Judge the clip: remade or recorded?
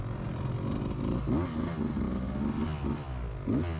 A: recorded